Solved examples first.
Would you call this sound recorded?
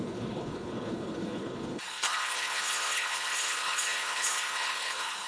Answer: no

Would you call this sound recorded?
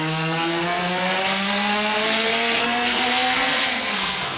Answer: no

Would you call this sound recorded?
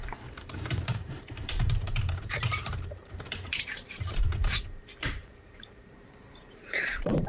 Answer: no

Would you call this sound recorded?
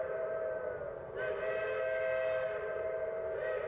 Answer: yes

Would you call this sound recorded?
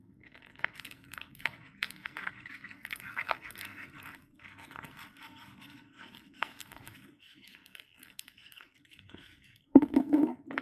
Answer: no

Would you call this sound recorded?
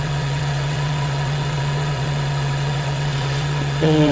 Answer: no